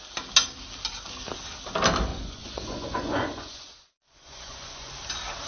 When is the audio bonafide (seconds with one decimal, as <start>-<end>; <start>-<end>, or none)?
0.0-2.1; 4.9-5.5